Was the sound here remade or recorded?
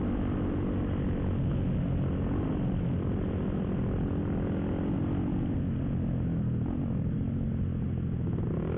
recorded